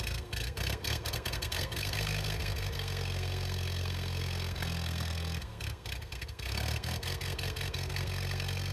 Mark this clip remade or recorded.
remade